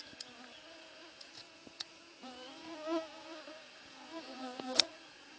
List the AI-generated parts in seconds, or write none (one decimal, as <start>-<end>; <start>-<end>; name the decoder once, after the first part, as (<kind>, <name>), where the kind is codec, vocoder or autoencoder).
0.0-5.4 (vocoder, Vocos)